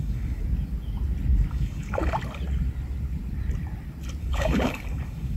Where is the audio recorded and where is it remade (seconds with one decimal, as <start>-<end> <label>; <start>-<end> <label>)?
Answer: 0.0-0.4 remade; 0.4-1.5 recorded; 1.5-2.0 remade; 2.0-4.2 recorded; 4.2-5.4 remade